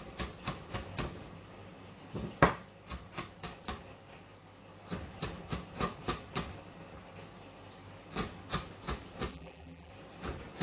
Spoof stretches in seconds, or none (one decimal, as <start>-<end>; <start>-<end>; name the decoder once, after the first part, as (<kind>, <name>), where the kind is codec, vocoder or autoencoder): 9.3-9.9 (vocoder, BigVGAN v2)